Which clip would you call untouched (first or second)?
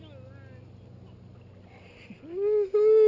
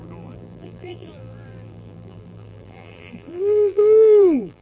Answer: first